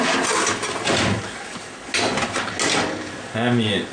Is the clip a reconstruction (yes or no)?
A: no